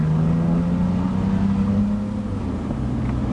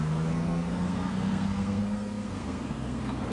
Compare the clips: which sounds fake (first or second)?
second